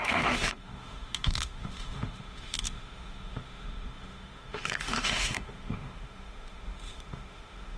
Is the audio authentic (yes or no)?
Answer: no